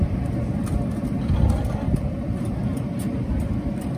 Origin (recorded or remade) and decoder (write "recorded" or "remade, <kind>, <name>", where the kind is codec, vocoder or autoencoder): remade, vocoder, BigVGAN v2